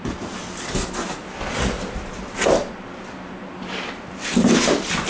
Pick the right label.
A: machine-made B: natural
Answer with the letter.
B